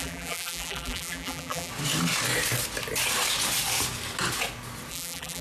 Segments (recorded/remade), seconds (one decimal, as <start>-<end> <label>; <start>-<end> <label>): 0.0-1.7 remade; 1.7-4.9 recorded; 4.9-5.4 remade